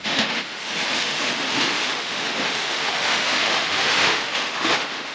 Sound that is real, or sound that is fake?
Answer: fake